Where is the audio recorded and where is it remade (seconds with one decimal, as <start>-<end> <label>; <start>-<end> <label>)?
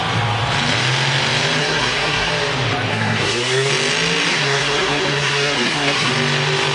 0.0-1.6 recorded; 1.6-2.3 remade; 2.3-2.9 recorded; 2.9-3.7 remade; 3.7-4.3 recorded; 4.3-6.1 remade; 6.1-6.7 recorded